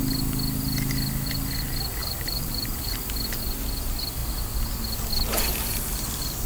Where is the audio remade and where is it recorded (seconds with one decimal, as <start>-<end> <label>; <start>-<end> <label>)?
0.0-2.0 recorded; 2.0-2.9 remade; 2.9-6.5 recorded